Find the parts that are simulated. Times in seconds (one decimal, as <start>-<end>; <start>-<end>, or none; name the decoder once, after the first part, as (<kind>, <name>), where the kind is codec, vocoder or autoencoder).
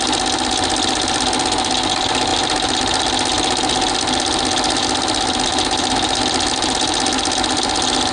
none